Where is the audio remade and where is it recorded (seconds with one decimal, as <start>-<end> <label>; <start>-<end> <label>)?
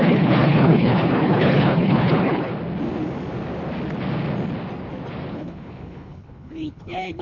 0.0-2.5 remade; 2.5-5.3 recorded; 5.3-7.2 remade